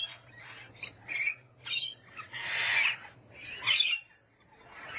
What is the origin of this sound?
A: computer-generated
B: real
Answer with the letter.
B